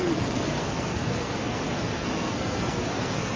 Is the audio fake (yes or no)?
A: yes